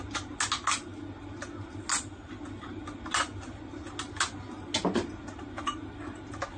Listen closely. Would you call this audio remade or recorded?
recorded